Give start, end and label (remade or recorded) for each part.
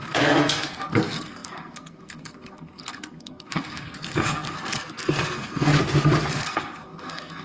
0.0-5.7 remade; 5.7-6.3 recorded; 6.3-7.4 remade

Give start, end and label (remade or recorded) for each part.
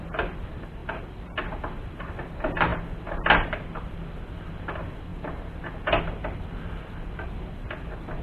0.0-8.2 recorded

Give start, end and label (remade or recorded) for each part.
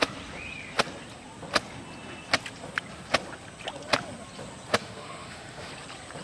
0.0-4.8 recorded; 4.8-5.7 remade; 5.7-6.2 recorded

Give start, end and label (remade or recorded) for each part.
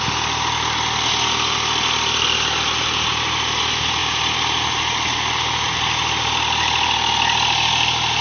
0.0-8.2 recorded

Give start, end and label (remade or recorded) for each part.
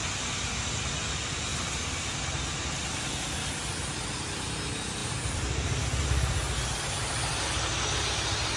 0.0-5.0 recorded; 5.0-5.8 remade; 5.8-8.6 recorded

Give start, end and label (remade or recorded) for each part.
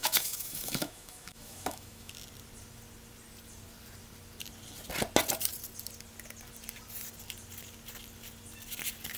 0.0-2.1 remade; 2.1-9.2 recorded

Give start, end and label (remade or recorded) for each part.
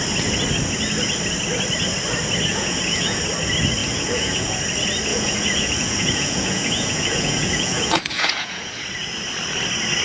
0.0-2.5 recorded; 2.5-3.2 remade; 3.2-3.8 recorded; 3.8-4.6 remade; 4.6-5.1 recorded; 5.1-8.7 remade; 8.7-10.0 recorded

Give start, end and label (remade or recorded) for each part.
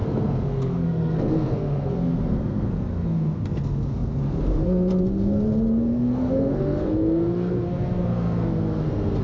0.0-9.2 remade